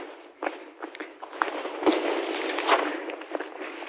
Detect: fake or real real